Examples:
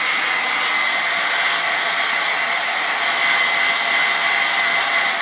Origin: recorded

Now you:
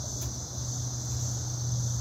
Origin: recorded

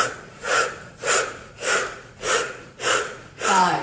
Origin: remade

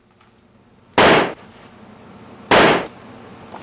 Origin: recorded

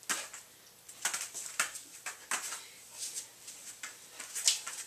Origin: recorded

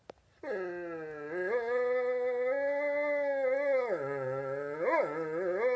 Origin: recorded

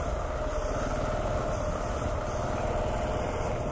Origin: recorded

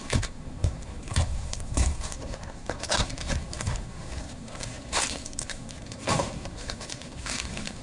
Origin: remade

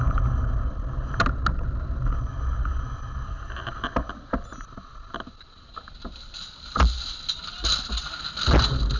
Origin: recorded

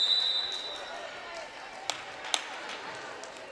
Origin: recorded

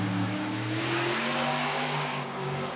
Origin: remade